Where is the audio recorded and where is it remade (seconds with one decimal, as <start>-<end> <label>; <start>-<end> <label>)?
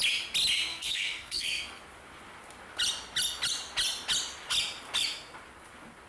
0.0-0.7 recorded; 0.7-1.8 remade; 1.8-6.1 recorded